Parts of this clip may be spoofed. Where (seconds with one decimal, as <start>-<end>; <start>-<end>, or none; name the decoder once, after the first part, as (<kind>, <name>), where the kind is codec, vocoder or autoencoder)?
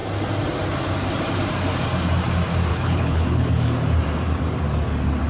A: 2.7-3.5 (codec, HILCodec)